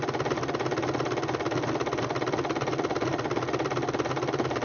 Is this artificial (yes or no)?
no